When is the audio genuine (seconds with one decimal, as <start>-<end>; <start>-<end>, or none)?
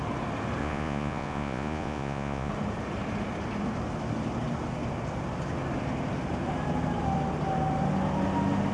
0.0-0.6; 2.5-8.7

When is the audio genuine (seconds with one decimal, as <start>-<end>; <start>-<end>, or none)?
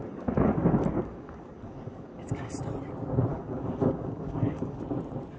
2.5-3.3; 4.8-5.4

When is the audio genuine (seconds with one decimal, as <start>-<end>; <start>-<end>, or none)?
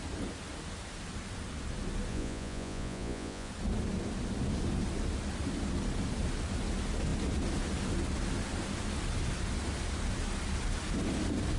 0.0-2.1; 3.5-11.6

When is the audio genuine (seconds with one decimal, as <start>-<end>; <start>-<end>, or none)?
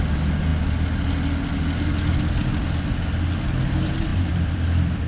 0.0-4.1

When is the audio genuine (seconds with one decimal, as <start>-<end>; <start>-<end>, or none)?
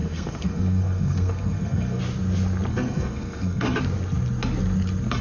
2.0-2.7; 3.8-5.2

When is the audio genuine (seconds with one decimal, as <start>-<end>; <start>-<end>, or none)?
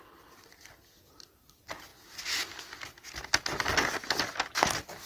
0.0-5.1